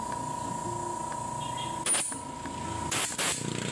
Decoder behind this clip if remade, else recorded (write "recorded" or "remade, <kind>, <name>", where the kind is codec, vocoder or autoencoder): recorded